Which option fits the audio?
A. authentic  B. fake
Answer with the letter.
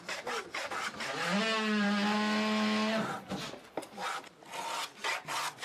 A